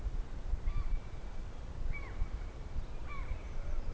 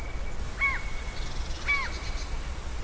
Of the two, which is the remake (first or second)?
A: first